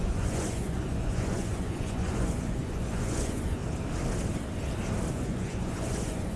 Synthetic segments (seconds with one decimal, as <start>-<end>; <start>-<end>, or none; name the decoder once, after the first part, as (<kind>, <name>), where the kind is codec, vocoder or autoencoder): 0.0-3.6 (vocoder, Vocos); 5.1-6.4